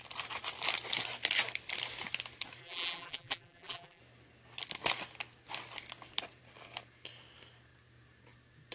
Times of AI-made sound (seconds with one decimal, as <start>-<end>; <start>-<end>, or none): 2.6-4.0